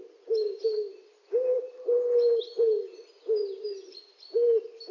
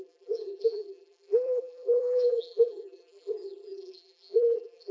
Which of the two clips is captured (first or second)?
first